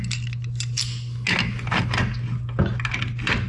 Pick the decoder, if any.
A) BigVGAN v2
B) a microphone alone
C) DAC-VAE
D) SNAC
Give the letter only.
B